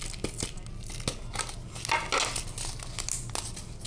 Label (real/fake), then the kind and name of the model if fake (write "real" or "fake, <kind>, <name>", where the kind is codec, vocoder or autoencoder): real